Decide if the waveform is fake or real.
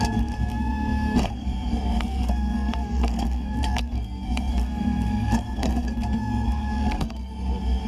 fake